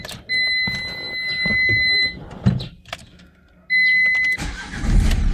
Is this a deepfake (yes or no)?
no